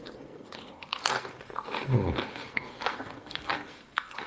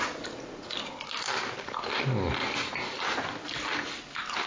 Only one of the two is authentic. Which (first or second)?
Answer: second